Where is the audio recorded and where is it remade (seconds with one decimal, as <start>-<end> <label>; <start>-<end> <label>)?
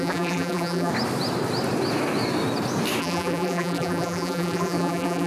0.0-0.9 remade; 0.9-3.0 recorded; 3.0-5.3 remade